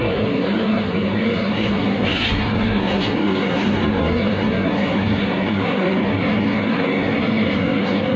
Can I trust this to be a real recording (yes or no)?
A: no